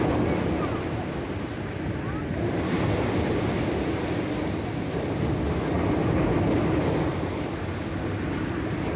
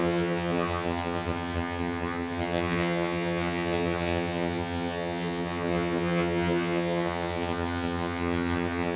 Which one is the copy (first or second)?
second